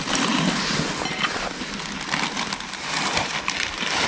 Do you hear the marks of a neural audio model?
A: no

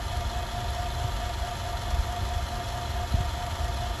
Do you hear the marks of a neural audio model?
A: no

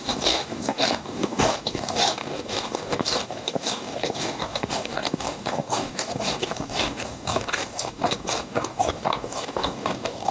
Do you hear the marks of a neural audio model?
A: yes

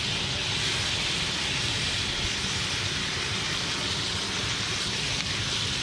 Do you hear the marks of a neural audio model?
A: no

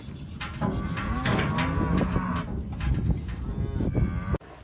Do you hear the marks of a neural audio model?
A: no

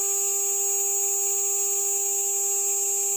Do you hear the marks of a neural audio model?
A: no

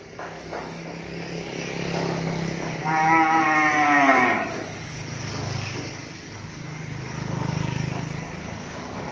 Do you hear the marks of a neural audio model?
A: yes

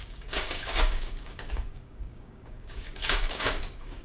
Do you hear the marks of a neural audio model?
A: yes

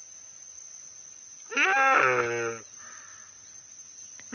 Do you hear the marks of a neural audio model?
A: no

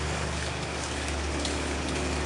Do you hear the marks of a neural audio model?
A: yes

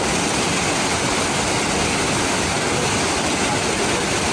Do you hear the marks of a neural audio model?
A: no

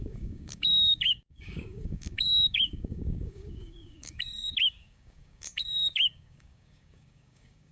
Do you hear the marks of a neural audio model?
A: yes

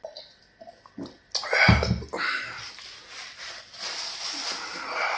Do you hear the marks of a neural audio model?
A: no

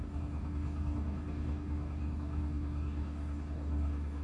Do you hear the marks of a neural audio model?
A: yes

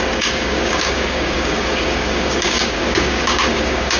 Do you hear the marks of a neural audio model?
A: yes